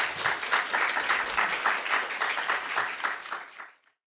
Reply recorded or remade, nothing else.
recorded